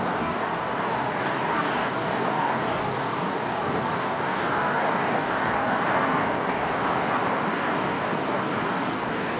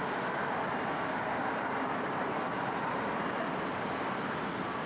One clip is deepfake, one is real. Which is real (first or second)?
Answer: second